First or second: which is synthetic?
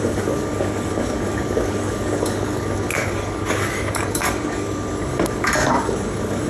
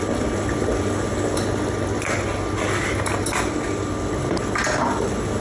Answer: first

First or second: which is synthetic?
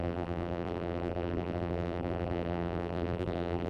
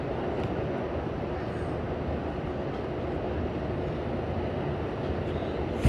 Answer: first